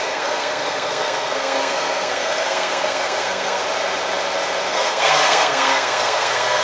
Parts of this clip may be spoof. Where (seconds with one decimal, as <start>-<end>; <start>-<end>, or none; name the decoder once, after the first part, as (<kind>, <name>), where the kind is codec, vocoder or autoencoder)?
0.0-3.6 (codec, SNAC); 4.7-6.6